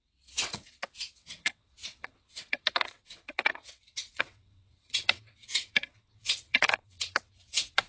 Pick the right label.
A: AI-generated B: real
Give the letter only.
A